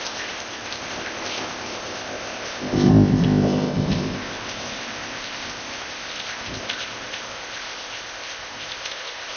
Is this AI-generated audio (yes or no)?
yes